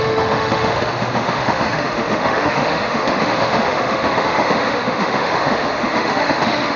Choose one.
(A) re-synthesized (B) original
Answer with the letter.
A